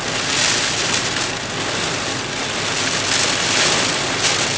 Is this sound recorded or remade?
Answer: recorded